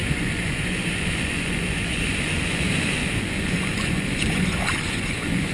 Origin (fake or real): fake